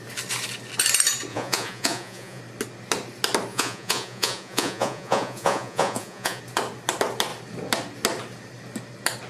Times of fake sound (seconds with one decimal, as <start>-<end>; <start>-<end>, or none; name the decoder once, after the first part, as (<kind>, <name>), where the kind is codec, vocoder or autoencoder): 1.3-2.4 (vocoder, Vocos); 3.5-6.4